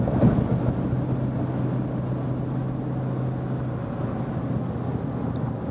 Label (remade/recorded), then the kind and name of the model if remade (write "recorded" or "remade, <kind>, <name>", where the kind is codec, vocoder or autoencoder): recorded